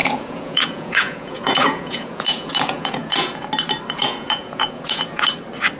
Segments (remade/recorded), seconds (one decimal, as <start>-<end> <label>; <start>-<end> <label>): 0.0-3.5 remade; 3.5-4.0 recorded; 4.0-5.3 remade; 5.3-5.8 recorded